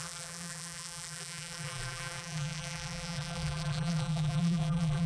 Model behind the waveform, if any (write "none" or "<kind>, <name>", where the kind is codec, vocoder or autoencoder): vocoder, BigVGAN v2